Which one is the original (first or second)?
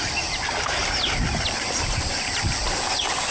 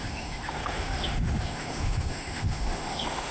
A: first